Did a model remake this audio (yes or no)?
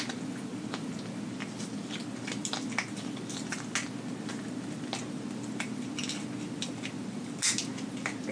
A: no